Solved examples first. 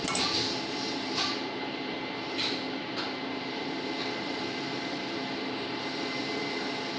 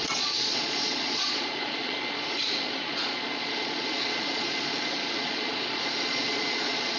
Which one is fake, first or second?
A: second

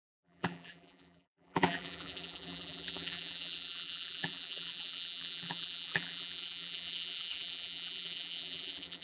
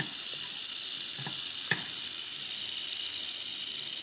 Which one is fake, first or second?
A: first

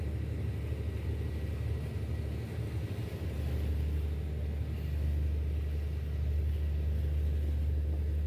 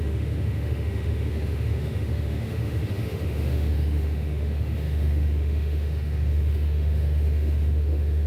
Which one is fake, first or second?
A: second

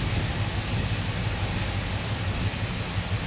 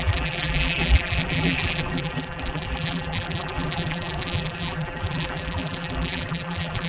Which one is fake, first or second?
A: second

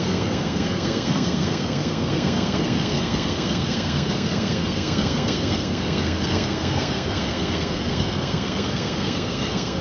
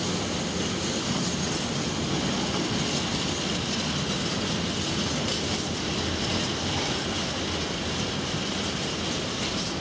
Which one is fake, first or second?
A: first